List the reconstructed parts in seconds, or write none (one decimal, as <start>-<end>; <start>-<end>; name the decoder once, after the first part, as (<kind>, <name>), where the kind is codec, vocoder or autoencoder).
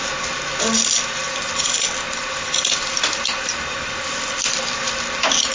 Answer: 1.2-4.5 (vocoder, BigVGAN v2)